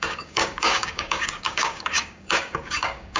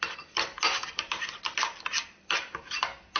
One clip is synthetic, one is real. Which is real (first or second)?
second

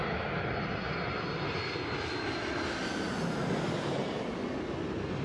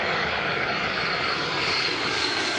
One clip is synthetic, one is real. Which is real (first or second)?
first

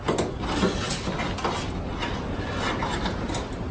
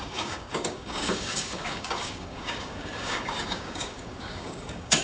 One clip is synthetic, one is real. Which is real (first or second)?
first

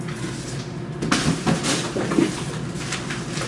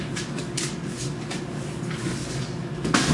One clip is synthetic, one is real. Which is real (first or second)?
first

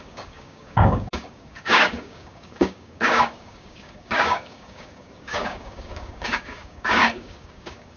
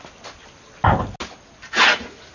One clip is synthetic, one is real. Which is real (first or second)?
second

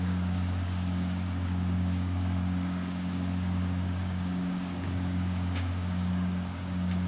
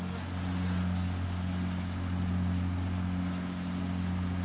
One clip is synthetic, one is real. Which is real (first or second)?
second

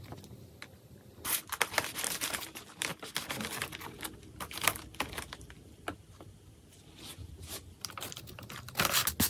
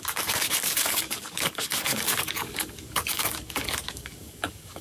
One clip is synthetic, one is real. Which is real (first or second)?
first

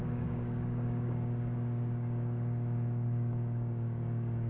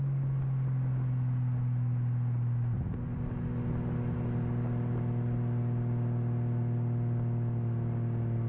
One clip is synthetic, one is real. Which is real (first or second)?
second